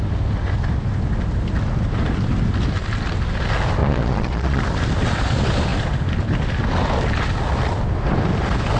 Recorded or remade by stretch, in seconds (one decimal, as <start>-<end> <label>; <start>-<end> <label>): 0.0-3.8 recorded; 3.8-4.6 remade; 4.6-8.8 recorded